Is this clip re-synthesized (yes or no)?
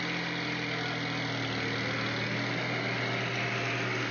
no